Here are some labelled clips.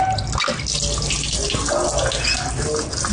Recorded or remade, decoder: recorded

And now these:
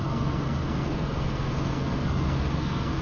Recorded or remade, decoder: remade, codec, SNAC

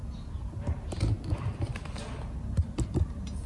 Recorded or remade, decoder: recorded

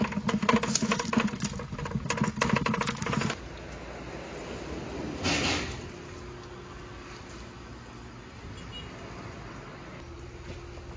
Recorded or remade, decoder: recorded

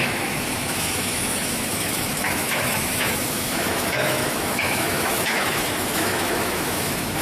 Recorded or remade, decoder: remade, autoencoder, DAC-VAE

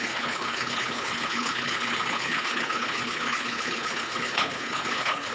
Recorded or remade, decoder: remade, codec, HILCodec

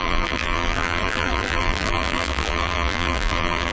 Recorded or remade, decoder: remade, vocoder, BigVGAN v2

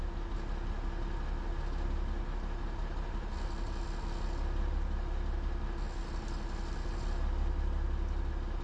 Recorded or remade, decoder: recorded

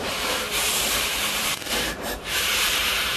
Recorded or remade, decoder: remade, vocoder, BigVGAN v2